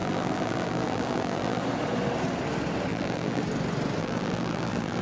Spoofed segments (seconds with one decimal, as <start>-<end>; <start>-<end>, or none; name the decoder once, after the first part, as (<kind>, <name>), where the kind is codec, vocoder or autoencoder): 0.0-1.6 (vocoder, BigVGAN v2); 2.9-3.4; 4.0-5.0